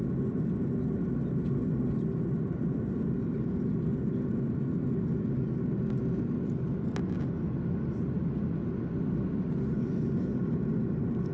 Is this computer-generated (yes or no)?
no